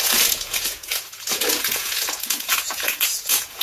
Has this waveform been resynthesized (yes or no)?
yes